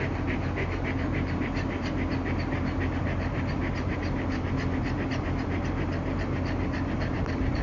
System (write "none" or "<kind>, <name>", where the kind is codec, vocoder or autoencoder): none